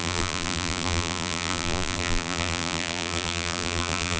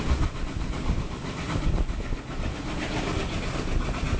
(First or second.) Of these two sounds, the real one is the second